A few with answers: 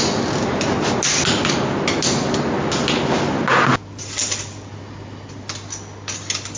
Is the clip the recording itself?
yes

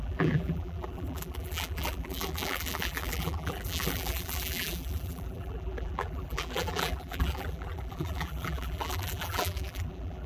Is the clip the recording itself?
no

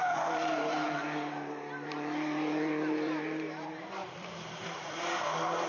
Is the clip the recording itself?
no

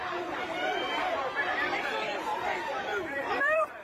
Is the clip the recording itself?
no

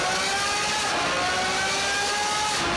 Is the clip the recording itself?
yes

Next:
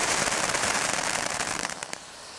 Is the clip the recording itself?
no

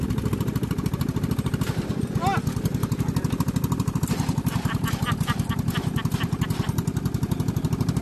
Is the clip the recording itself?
yes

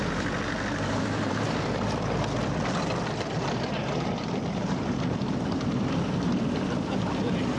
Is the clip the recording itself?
no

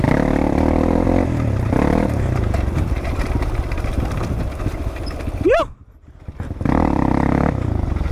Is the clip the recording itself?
no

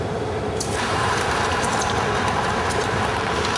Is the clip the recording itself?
no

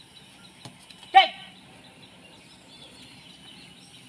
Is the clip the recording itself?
yes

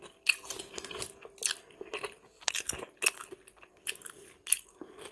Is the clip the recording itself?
yes